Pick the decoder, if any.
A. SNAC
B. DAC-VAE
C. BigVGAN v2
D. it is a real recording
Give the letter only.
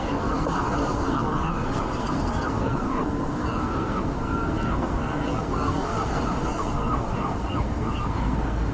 A